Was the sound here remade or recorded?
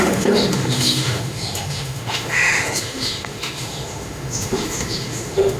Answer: remade